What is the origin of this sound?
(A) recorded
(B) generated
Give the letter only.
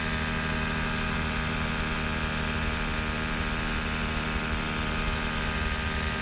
A